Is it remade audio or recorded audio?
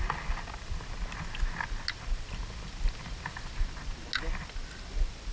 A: recorded